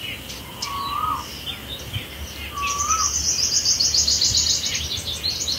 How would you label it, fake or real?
real